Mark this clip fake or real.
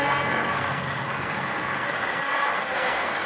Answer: fake